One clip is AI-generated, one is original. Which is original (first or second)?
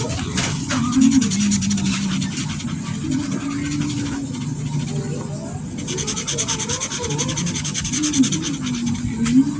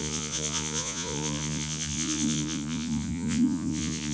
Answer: first